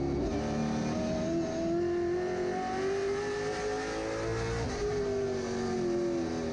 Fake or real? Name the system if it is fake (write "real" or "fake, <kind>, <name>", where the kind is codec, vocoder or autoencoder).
real